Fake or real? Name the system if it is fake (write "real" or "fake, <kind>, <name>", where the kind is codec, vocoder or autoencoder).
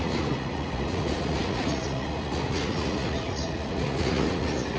fake, vocoder, Vocos